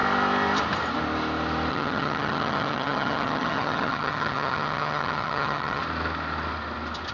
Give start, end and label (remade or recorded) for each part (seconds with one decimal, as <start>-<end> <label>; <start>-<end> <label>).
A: 0.0-1.7 recorded; 1.7-5.8 remade; 5.8-7.1 recorded